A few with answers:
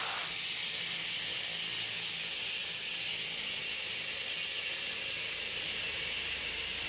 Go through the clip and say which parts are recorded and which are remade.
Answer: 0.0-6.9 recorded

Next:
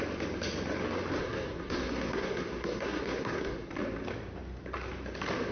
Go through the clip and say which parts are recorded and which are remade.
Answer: 0.0-1.2 recorded; 1.2-3.7 remade; 3.7-5.5 recorded

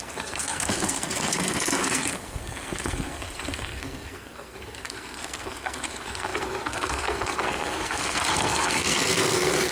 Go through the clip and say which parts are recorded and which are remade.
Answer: 0.0-9.7 remade

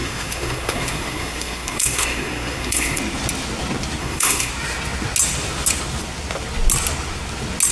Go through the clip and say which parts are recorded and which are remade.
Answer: 0.0-3.0 remade; 3.0-4.0 recorded; 4.0-4.5 remade; 4.5-7.7 recorded

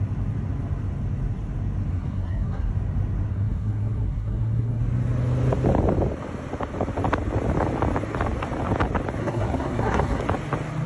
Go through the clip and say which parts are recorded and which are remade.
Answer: 0.0-1.9 recorded; 1.9-2.7 remade; 2.7-3.3 recorded; 3.3-4.8 remade; 4.8-9.2 recorded; 9.2-10.2 remade; 10.2-10.9 recorded

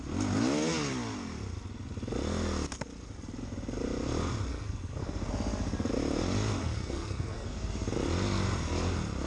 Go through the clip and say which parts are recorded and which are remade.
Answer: 0.0-4.5 recorded; 4.5-5.3 remade; 5.3-6.6 recorded; 6.6-7.7 remade; 7.7-9.3 recorded

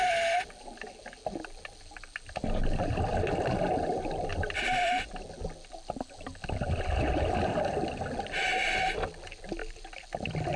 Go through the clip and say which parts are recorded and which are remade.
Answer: 0.0-4.3 recorded; 4.3-5.1 remade; 5.1-10.6 recorded